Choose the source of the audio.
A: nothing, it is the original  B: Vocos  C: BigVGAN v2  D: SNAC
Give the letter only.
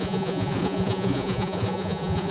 B